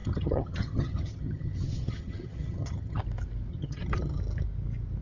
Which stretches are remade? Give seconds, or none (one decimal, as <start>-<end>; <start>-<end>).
0.0-3.0; 3.5-4.2